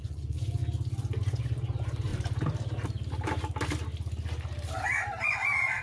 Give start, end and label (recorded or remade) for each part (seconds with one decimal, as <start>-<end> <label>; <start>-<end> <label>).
0.0-0.6 remade; 0.6-1.2 recorded; 1.2-2.1 remade; 2.1-5.8 recorded